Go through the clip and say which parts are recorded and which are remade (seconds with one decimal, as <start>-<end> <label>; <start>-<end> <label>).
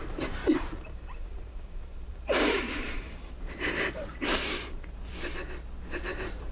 0.0-5.1 remade; 5.1-5.9 recorded; 5.9-6.5 remade